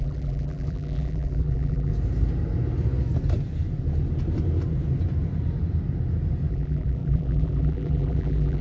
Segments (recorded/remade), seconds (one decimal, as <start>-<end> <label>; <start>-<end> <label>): 0.0-1.9 remade; 1.9-6.5 recorded; 6.5-8.6 remade